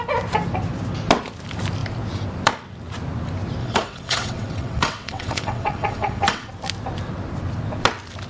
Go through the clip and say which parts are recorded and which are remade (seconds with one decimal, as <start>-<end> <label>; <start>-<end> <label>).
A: 0.0-3.6 recorded; 3.6-6.5 remade; 6.5-8.3 recorded